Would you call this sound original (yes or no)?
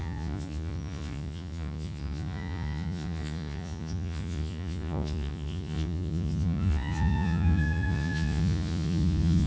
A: no